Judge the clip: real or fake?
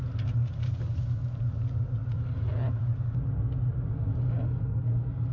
real